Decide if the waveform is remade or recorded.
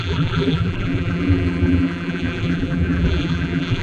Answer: remade